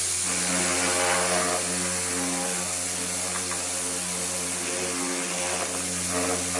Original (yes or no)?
yes